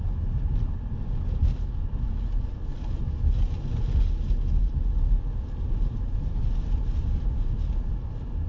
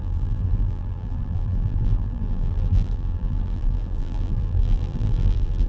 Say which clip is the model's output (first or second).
second